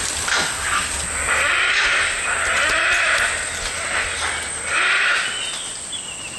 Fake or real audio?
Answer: real